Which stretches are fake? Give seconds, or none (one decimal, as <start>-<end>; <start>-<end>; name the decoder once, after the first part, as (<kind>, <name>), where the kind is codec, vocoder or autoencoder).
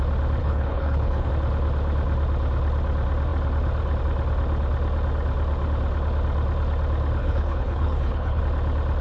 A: 0.4-1.3 (codec, HILCodec); 7.2-8.4